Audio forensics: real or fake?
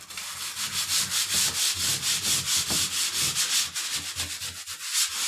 real